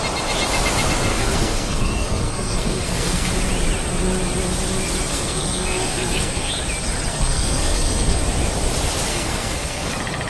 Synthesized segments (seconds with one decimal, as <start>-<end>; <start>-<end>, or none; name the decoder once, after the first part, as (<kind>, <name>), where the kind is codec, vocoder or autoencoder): 1.1-3.3 (codec, SNAC); 5.1-6.5; 7.1-8.2; 9.1-9.9